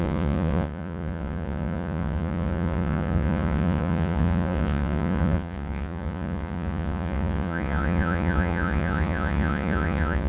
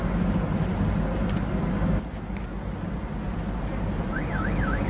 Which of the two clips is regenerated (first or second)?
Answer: first